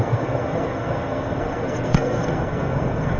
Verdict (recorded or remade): remade